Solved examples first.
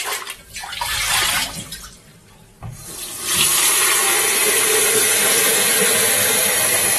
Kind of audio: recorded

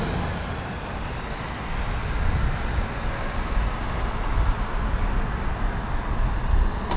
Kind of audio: recorded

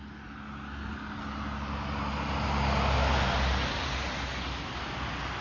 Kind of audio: recorded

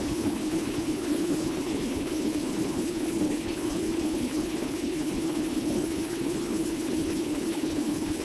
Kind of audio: remade